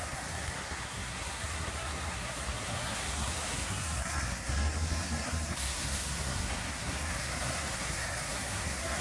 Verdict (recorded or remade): remade